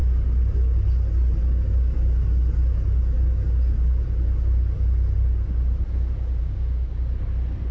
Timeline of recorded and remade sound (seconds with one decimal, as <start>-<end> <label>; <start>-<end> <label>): 0.0-6.4 recorded; 6.4-6.9 remade; 6.9-7.7 recorded